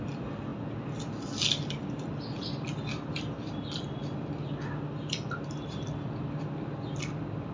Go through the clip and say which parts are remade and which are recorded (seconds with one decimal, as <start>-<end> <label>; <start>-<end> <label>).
0.0-7.5 recorded